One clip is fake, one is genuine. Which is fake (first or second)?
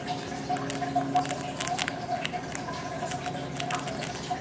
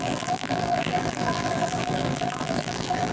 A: second